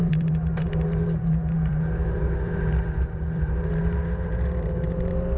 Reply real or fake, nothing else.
fake